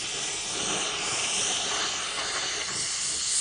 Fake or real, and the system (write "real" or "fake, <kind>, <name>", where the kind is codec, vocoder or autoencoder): real